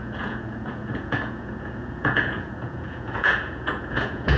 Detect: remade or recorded remade